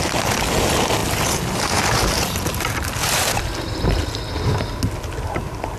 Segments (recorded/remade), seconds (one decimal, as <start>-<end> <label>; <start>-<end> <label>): 0.0-5.8 recorded